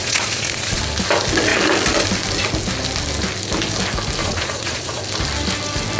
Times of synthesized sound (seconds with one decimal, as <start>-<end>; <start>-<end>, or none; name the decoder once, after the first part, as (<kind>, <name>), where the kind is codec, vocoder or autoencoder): 0.0-0.8 (vocoder, Vocos); 4.2-5.0